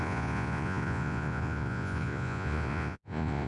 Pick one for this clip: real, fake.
fake